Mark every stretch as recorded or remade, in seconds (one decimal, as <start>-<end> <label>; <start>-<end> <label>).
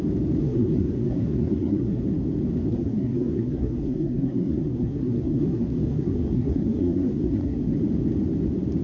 0.0-0.4 recorded; 0.4-2.0 remade; 2.0-2.7 recorded; 2.7-7.7 remade; 7.7-8.8 recorded